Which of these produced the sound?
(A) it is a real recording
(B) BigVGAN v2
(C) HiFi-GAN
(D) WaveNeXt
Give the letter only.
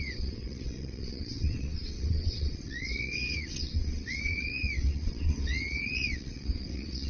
D